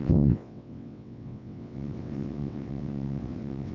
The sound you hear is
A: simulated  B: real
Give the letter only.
A